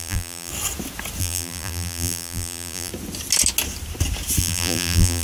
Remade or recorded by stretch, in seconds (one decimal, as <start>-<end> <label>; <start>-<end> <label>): 0.0-0.5 remade; 0.5-1.2 recorded; 1.2-2.9 remade; 2.9-4.4 recorded; 4.4-5.2 remade

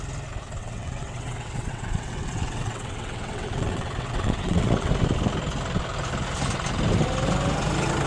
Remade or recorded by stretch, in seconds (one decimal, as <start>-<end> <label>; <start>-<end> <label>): 0.0-0.6 recorded; 0.6-4.9 remade; 4.9-8.1 recorded

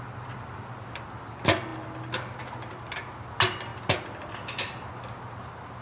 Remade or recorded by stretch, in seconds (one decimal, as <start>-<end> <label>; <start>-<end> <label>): 0.0-5.8 recorded

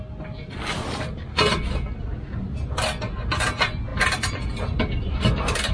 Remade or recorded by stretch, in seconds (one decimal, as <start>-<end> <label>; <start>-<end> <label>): 0.0-5.7 recorded

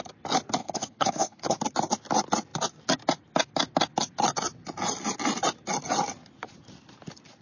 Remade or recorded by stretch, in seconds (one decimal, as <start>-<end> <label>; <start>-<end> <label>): 0.0-0.6 recorded; 0.6-1.6 remade; 1.6-7.4 recorded

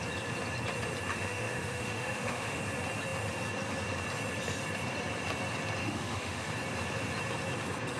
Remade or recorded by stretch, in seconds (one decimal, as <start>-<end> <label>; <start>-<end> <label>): 0.0-1.1 recorded; 1.1-2.6 remade; 2.6-5.8 recorded; 5.8-6.5 remade; 6.5-8.0 recorded

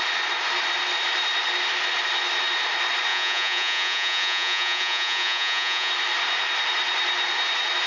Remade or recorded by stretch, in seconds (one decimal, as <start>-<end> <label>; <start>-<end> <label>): 0.0-3.1 recorded; 3.1-5.9 remade; 5.9-7.9 recorded